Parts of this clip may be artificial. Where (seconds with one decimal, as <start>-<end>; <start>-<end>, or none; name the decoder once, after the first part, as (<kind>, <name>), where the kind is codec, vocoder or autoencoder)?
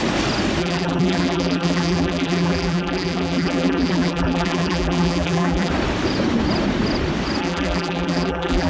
0.6-5.7 (vocoder, BigVGAN v2); 7.4-8.7